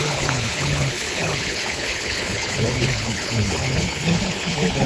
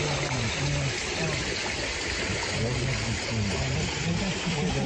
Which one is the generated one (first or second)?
first